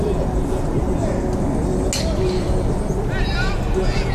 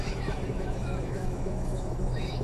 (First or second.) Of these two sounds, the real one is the first